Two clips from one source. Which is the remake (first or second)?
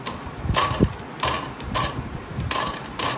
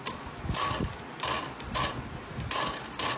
first